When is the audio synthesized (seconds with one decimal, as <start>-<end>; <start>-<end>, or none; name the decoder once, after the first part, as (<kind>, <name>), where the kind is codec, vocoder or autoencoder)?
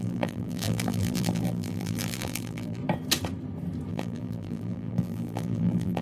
0.0-2.8 (vocoder, BigVGAN v2); 3.9-6.0